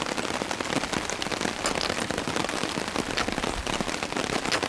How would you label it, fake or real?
real